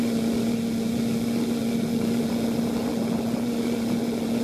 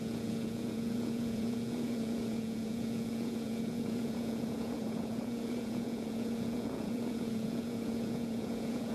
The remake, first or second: second